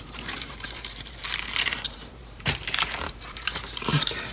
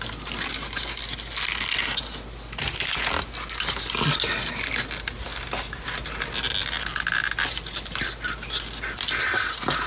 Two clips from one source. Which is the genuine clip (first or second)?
second